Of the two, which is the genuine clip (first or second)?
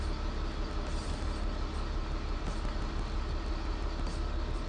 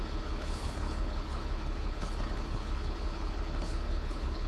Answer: first